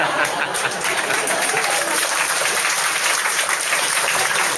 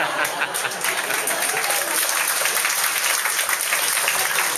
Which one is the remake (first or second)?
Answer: first